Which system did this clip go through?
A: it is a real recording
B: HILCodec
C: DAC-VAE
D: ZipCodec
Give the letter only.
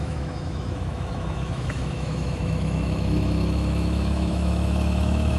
C